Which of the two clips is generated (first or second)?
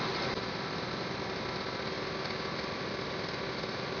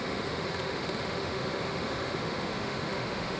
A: second